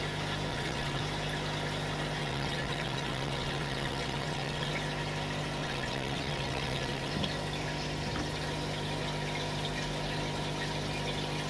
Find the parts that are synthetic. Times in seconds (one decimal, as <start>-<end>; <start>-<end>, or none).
0.5-1.0; 2.2-4.7; 5.6-7.1